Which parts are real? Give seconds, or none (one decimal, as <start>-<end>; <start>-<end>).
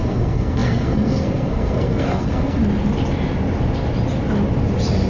2.6-5.1